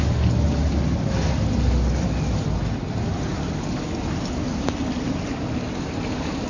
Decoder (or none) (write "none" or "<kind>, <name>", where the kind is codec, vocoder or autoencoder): none